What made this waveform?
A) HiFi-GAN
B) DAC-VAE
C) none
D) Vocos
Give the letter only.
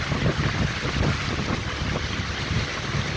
C